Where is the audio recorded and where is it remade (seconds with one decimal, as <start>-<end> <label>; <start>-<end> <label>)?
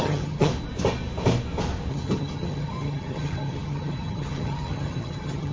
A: 0.0-0.5 remade; 0.5-1.9 recorded; 1.9-5.5 remade